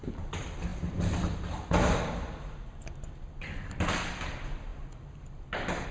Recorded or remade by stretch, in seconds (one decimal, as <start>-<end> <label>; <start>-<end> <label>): 0.0-4.7 remade; 4.7-5.4 recorded; 5.4-5.9 remade